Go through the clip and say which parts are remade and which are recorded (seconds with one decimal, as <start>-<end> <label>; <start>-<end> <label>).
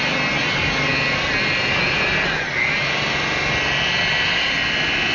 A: 0.0-5.1 recorded